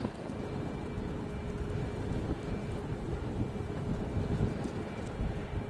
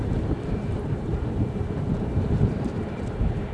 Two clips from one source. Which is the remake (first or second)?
second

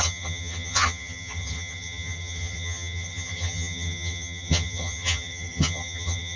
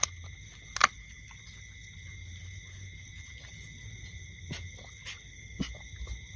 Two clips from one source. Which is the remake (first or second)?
first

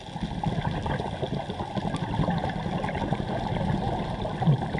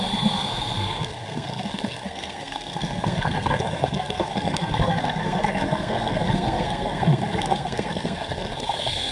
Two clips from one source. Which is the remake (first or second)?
second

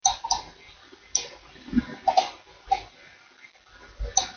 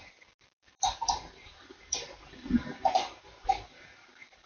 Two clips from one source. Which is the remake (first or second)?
second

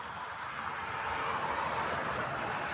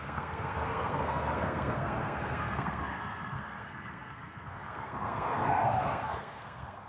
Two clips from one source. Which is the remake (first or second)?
second